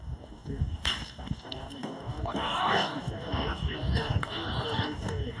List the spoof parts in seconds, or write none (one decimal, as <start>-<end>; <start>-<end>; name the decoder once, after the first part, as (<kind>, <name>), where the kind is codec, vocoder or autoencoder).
0.0-5.4 (codec, DAC)